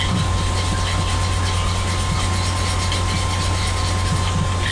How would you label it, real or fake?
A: real